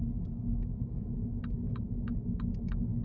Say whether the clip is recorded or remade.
remade